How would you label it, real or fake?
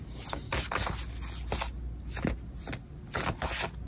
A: real